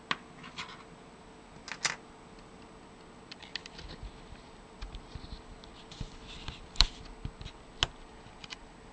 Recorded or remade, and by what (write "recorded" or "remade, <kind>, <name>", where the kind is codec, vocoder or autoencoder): recorded